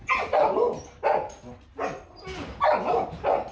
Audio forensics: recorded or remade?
recorded